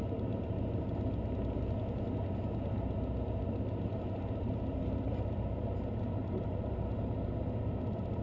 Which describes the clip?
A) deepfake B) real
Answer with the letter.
B